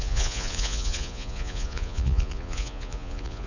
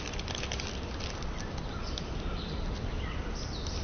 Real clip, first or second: second